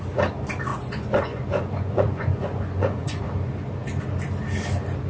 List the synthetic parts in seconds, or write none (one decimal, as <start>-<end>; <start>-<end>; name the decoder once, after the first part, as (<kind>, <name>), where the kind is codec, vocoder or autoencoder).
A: 0.7-3.2 (vocoder, Vocos)